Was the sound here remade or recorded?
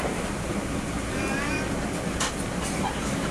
recorded